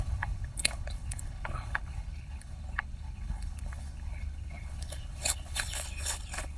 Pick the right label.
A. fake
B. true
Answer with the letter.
A